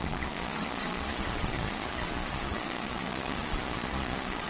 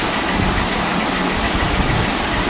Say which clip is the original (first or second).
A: second